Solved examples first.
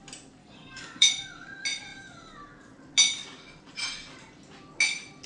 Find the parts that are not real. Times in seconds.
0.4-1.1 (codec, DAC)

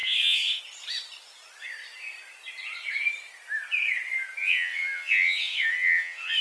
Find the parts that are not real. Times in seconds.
0.0-0.6 (vocoder, WaveNeXt); 4.4-6.4

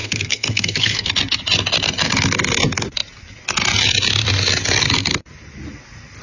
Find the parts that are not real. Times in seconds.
0.0-1.1 (codec, SNAC)

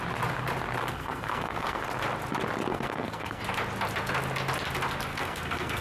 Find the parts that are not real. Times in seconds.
0.8-1.8 (codec, SNAC); 2.7-3.4; 5.1-5.8

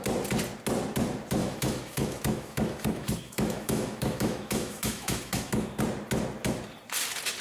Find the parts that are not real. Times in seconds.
1.4-5.8 (autoencoder, DAC-VAE)

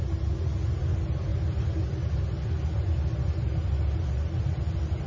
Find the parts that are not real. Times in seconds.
none